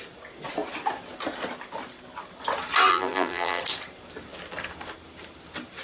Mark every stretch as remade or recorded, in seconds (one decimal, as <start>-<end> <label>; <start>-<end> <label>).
0.0-2.9 recorded; 2.9-3.6 remade; 3.6-5.8 recorded